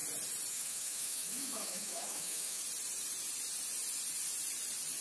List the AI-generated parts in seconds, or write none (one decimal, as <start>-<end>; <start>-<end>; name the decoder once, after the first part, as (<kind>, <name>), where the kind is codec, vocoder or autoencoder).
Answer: 0.5-2.6 (autoencoder, DAC-VAE)